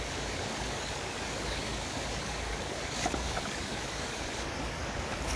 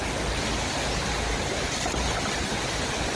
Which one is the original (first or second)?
second